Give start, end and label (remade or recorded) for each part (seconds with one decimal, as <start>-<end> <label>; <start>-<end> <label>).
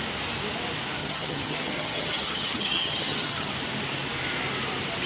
0.0-1.0 recorded; 1.0-3.5 remade; 3.5-5.1 recorded